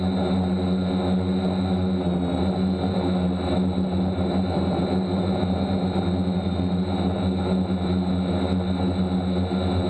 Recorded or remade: recorded